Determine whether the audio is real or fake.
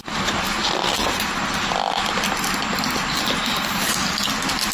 real